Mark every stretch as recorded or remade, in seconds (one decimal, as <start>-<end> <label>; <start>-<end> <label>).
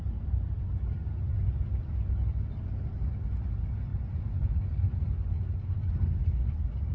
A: 0.0-6.9 recorded